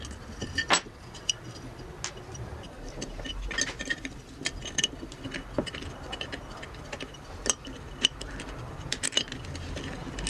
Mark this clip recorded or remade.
recorded